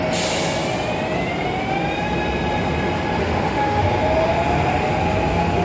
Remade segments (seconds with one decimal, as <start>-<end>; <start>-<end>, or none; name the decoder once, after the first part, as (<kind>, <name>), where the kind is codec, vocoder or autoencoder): 3.2-3.8 (autoencoder, DAC-VAE)